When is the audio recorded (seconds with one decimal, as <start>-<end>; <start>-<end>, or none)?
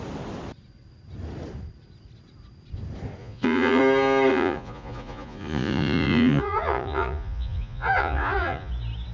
0.0-3.2; 3.8-4.3; 8.7-9.1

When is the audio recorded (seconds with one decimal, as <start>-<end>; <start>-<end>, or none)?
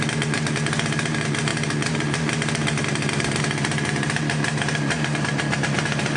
0.0-6.2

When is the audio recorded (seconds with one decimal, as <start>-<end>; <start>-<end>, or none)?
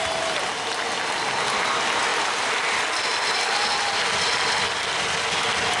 0.0-5.8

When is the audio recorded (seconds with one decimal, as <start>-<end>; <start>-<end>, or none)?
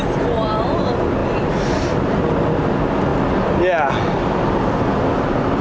0.0-5.6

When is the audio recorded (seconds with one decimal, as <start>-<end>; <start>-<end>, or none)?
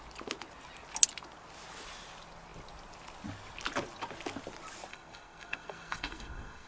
0.0-4.9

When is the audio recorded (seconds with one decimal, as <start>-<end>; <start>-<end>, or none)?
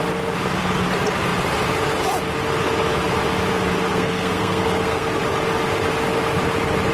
0.0-3.9; 5.2-6.9